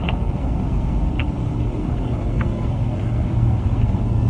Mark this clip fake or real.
fake